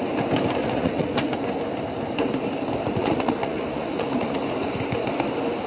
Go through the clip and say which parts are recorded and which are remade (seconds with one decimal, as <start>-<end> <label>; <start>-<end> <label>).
0.0-0.6 recorded; 0.6-1.4 remade; 1.4-3.0 recorded; 3.0-4.4 remade; 4.4-5.7 recorded